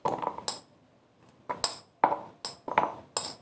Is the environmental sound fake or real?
real